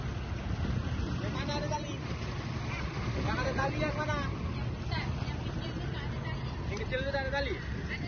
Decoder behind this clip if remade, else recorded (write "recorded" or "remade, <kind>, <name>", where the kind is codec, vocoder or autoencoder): recorded